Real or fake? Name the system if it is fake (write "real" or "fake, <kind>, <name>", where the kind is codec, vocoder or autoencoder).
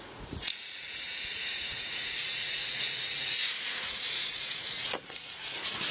fake, vocoder, Vocos